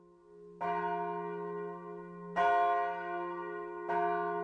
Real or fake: real